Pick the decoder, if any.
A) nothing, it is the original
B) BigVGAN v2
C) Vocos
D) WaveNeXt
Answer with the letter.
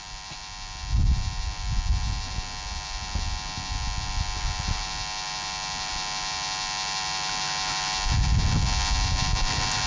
A